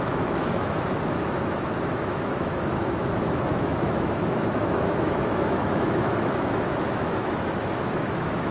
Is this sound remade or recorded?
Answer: remade